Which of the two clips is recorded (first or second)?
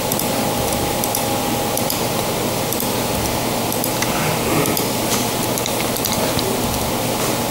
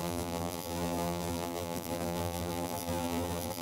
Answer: first